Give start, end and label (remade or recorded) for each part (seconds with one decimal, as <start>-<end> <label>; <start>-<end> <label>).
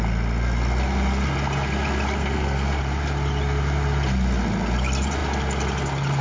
0.0-2.2 recorded; 2.2-2.8 remade; 2.8-6.2 recorded